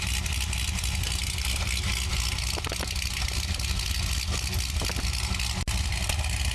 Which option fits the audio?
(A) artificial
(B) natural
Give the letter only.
B